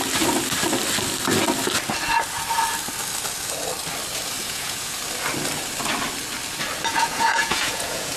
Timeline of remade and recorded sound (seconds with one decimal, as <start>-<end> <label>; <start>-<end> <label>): 0.0-4.4 recorded; 4.4-5.0 remade; 5.0-6.9 recorded; 6.9-8.2 remade